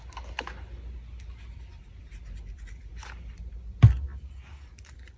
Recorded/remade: recorded